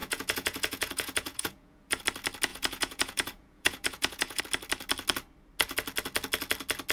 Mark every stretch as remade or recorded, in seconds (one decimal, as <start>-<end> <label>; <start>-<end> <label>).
0.0-2.0 remade; 2.0-2.5 recorded; 2.5-4.4 remade; 4.4-6.9 recorded